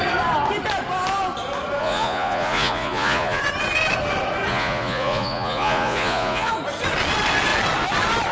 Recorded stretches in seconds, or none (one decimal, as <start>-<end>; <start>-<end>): 0.0-1.8; 3.4-4.5; 6.5-8.3